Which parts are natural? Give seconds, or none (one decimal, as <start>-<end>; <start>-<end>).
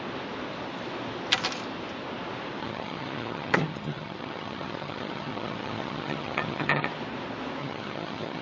0.0-2.6; 6.9-7.6